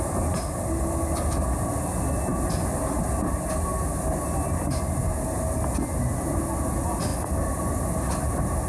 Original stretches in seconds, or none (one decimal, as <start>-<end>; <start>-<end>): 0.0-8.7